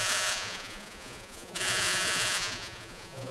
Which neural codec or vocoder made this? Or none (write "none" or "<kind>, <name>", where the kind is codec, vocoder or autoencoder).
vocoder, Vocos